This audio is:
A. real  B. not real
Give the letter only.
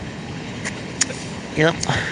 B